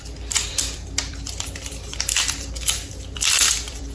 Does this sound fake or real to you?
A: fake